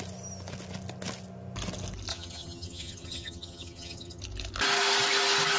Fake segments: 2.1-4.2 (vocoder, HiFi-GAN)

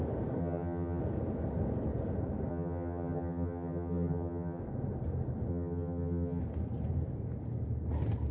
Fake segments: 0.4-1.0 (vocoder, HiFi-GAN); 2.5-4.6; 5.5-6.4

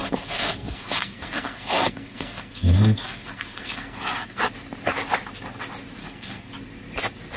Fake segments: 0.0-4.4 (codec, SNAC); 6.0-6.5

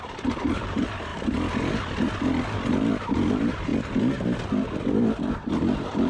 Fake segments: none

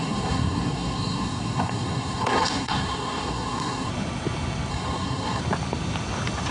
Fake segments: 0.0-3.9 (codec, SNAC); 4.7-5.4